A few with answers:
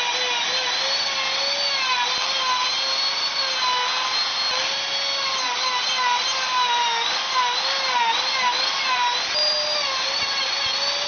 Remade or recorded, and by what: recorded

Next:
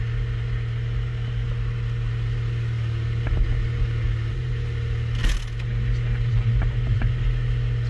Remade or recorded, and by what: recorded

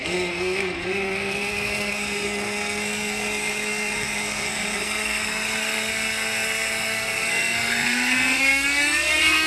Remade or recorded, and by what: remade, codec, SNAC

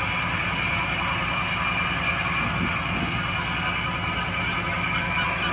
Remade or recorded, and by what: recorded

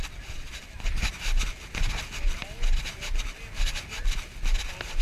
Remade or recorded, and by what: recorded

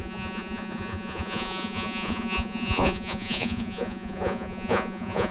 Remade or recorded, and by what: remade, vocoder, Vocos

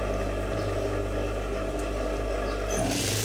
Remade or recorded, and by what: recorded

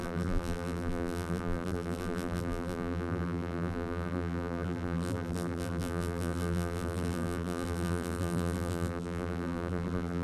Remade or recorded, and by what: remade, vocoder, BigVGAN v2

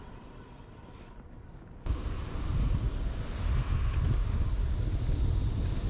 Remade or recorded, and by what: recorded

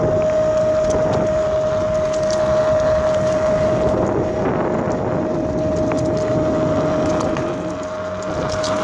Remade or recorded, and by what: recorded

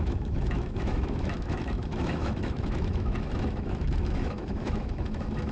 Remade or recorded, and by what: remade, autoencoder, DAC-VAE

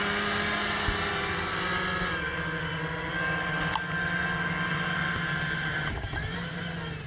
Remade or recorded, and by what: recorded